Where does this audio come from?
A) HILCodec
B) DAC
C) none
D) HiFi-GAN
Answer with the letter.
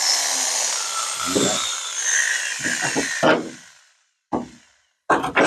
C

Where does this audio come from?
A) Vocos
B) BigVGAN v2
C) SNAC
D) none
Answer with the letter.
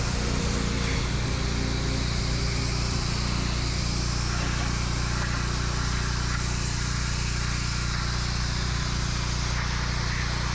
D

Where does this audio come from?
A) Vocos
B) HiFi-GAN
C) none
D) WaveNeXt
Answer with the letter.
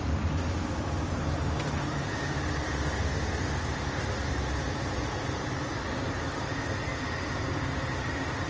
C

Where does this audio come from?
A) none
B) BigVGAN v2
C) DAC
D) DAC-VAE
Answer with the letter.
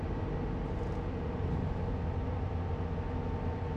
A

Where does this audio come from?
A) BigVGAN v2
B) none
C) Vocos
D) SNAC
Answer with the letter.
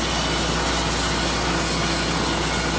B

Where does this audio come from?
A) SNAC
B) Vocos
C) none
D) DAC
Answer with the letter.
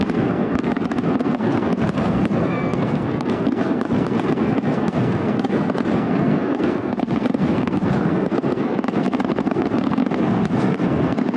A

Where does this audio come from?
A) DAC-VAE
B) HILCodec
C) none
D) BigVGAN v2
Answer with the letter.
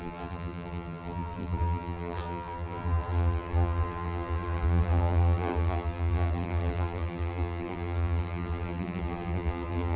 D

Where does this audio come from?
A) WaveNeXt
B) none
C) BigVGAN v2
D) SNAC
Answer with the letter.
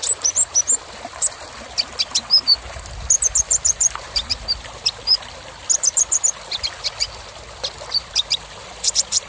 C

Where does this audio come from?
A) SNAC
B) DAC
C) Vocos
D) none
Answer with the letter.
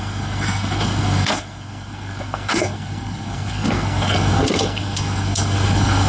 A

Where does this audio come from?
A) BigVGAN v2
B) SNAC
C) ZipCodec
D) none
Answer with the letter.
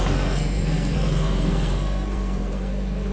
B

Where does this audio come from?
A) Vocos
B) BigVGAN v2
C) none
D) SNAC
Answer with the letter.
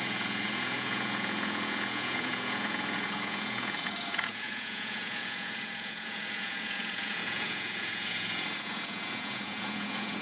A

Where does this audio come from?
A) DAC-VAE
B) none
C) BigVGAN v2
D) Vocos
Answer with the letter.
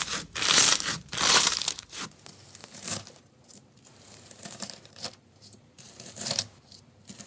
C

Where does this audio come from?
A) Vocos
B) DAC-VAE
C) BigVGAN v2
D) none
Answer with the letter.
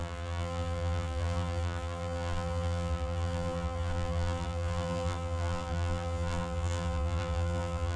C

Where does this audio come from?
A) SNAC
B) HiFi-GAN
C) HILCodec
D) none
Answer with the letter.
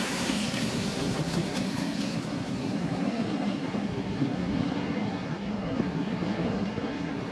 A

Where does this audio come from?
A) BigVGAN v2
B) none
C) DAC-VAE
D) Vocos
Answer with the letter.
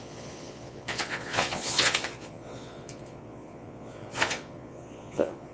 D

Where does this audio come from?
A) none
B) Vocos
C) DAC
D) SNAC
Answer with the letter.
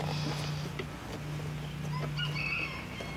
A